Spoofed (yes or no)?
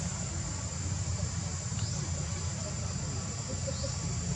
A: yes